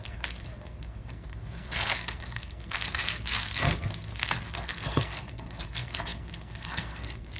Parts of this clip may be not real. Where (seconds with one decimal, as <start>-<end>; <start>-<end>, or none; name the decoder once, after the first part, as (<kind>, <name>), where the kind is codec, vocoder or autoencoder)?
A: 0.0-7.4 (codec, SNAC)

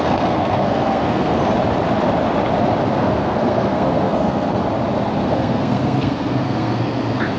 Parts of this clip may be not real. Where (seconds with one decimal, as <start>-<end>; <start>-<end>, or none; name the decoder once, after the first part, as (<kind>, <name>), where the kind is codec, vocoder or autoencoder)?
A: 0.0-1.4 (codec, SNAC); 2.9-4.6; 5.2-7.4

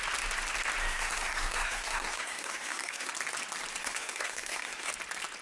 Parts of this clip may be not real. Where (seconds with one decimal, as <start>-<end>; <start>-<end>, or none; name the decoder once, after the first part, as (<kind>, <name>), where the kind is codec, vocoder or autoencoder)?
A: 0.8-3.1 (codec, SNAC); 3.8-4.9

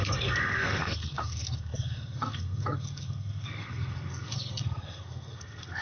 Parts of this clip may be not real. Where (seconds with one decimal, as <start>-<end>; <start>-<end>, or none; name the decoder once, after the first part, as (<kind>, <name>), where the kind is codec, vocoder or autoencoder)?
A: 0.0-5.8 (codec, SNAC)

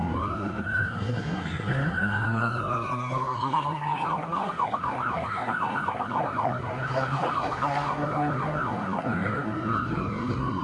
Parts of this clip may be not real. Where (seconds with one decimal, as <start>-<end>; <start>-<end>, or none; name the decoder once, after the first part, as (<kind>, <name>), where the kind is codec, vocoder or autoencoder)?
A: 0.0-10.6 (codec, SNAC)

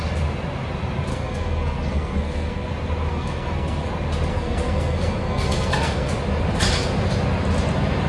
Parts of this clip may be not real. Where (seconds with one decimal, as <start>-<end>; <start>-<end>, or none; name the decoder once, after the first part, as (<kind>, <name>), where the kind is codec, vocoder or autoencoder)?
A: 1.1-2.7 (codec, SNAC); 3.1-3.9; 4.3-6.1

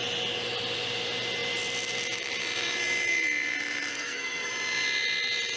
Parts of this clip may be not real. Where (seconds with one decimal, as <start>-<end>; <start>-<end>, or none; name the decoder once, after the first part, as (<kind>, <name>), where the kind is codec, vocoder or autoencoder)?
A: 3.9-4.5 (codec, SNAC)

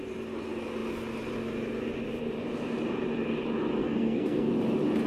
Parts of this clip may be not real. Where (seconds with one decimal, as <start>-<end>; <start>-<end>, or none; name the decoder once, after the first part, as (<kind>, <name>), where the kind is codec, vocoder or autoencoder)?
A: 3.8-4.5 (codec, SNAC)